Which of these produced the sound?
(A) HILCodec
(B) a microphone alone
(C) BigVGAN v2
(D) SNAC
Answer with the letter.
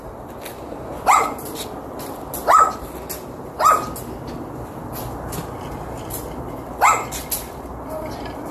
B